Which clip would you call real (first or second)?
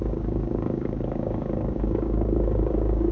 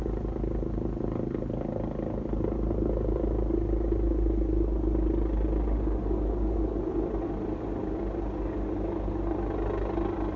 second